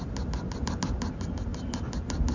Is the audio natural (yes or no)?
yes